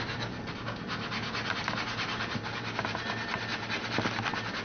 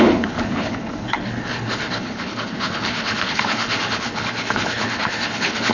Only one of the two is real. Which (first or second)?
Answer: first